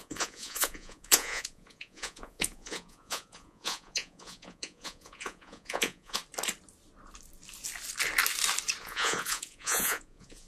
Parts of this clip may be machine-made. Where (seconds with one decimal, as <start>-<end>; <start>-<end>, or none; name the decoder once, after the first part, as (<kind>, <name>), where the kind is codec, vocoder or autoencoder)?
0.0-6.2 (vocoder, Vocos); 8.8-10.5

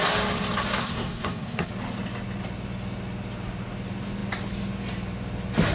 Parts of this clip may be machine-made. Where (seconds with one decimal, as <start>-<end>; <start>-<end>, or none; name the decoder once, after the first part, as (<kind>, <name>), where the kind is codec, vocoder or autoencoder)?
0.8-1.7 (codec, SNAC)

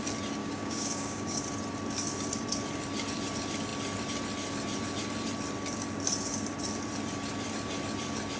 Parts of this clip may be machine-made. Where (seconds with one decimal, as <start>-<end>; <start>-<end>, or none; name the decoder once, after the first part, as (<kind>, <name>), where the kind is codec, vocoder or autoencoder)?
0.4-1.4 (codec, DAC)

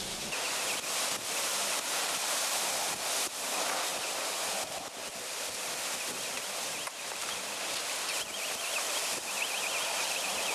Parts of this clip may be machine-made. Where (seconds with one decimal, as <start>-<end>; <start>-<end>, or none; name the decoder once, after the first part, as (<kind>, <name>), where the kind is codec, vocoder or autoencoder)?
none

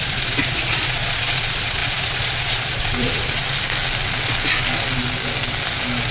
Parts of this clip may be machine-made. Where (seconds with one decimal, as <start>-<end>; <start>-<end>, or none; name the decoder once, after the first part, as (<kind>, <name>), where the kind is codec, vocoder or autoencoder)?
0.0-3.4 (vocoder, Vocos)